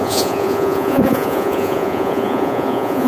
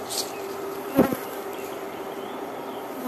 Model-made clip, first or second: first